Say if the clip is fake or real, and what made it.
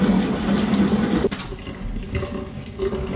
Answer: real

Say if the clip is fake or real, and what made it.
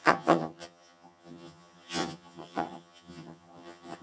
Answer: fake, vocoder, HiFi-GAN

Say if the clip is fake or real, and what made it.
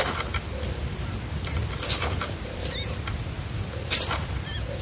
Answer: real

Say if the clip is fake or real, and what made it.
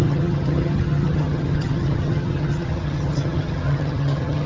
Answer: fake, vocoder, HiFi-GAN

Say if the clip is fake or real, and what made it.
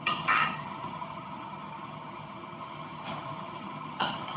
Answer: fake, vocoder, HiFi-GAN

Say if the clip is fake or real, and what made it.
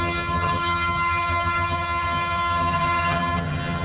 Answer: fake, vocoder, HiFi-GAN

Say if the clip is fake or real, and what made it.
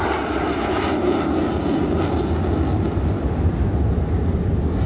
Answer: real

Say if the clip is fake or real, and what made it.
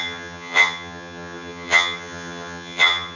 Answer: fake, vocoder, HiFi-GAN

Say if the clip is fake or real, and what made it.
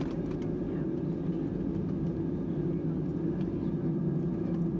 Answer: real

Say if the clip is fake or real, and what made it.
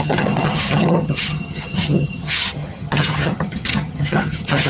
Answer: fake, vocoder, HiFi-GAN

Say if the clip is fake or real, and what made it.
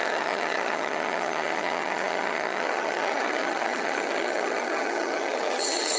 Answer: fake, vocoder, HiFi-GAN